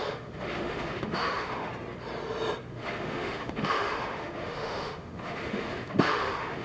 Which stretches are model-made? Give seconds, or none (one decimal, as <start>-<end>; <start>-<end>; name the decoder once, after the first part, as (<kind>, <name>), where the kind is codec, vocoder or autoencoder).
0.0-1.7 (autoencoder, DAC-VAE); 2.7-6.6